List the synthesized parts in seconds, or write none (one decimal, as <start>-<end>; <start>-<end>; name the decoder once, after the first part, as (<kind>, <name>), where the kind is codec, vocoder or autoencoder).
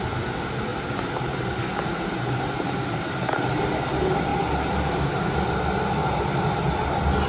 0.7-3.2 (vocoder, BigVGAN v2); 4.3-5.0; 6.0-6.7